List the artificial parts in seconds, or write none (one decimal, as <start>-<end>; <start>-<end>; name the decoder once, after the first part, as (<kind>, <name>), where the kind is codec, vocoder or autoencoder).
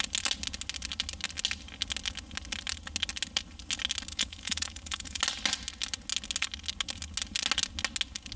4.1-5.2 (autoencoder, DAC-VAE)